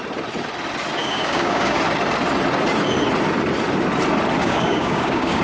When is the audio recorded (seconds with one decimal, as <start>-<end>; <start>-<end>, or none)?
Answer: 0.0-1.0; 1.8-4.4

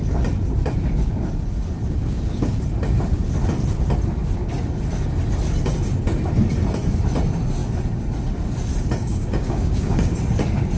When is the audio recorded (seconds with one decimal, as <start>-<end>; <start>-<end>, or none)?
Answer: 0.0-2.0; 2.6-9.0; 10.2-10.8

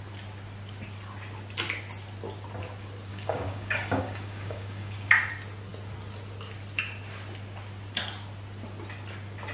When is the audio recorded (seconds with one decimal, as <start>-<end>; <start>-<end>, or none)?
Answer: 0.0-3.1; 5.1-9.5

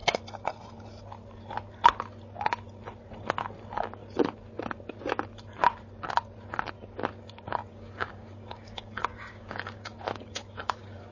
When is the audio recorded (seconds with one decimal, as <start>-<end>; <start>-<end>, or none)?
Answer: 0.0-7.7

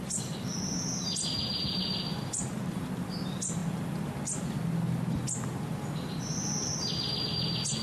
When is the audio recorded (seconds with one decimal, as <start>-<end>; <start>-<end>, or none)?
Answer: 0.0-7.8